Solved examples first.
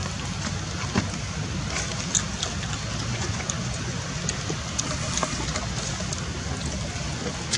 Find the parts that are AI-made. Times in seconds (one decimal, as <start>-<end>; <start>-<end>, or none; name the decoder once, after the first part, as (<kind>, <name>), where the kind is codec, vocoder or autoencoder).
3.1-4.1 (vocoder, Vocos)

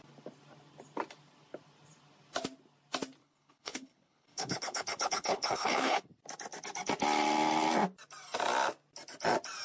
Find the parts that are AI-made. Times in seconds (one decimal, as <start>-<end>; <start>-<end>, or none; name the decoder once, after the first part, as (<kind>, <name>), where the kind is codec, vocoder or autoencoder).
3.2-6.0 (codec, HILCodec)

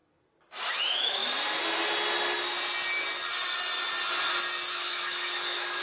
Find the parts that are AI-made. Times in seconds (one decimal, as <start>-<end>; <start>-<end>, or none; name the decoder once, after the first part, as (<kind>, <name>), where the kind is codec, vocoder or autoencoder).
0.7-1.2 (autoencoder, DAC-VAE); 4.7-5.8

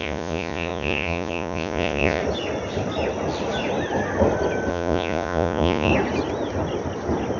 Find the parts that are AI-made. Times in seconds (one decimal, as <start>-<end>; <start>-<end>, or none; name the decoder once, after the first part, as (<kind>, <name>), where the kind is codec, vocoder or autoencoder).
0.0-2.2 (vocoder, Vocos); 4.7-5.9

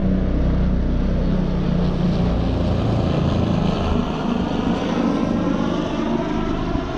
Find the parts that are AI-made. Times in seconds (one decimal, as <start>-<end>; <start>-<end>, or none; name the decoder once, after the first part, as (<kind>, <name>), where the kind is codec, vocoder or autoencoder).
none

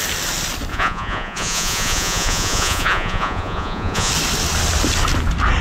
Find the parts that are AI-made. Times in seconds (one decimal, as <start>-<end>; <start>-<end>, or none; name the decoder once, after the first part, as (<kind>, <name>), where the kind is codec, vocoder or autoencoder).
0.7-4.1 (vocoder, Vocos)

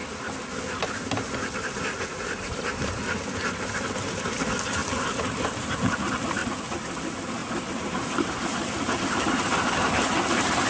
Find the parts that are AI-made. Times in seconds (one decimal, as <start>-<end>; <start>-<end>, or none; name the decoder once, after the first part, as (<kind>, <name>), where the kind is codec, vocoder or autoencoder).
none